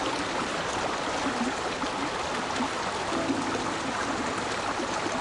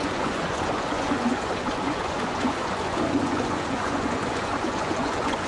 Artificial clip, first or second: second